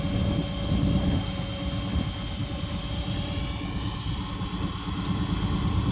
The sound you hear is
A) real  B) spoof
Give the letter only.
A